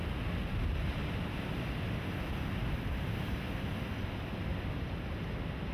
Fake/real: real